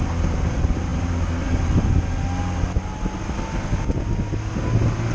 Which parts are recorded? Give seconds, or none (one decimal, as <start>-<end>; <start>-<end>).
0.0-5.1

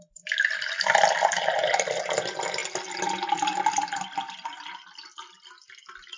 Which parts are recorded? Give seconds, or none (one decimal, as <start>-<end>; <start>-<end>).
2.6-6.2

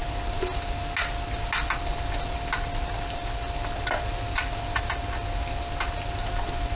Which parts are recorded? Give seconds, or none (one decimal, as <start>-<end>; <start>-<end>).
0.0-6.8